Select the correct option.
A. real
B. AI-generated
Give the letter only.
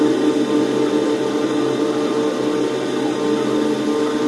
A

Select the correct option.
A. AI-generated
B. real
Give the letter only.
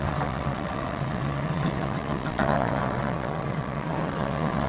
A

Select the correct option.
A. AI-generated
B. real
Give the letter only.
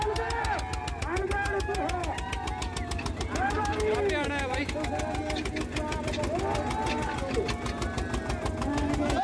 B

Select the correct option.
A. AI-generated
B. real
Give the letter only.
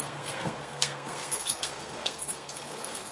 A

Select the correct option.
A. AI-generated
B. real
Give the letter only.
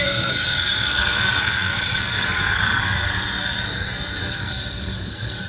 A